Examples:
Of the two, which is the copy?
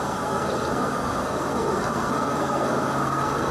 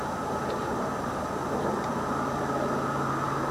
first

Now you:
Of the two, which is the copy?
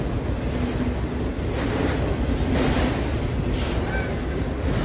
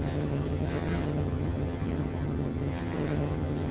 second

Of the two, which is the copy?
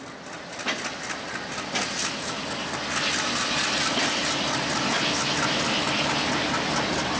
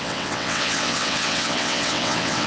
second